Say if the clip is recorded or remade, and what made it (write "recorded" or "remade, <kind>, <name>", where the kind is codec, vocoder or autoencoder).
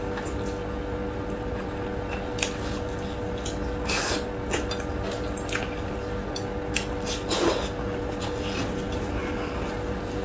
recorded